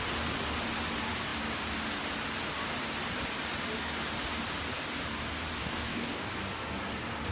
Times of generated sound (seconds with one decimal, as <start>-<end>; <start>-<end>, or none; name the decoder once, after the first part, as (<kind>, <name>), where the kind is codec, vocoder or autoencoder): 5.6-6.3 (codec, DAC)